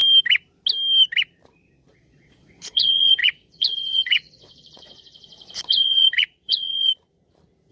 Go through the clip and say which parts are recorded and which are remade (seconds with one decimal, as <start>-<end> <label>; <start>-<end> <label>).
0.0-1.9 recorded; 1.9-6.9 remade; 6.9-7.7 recorded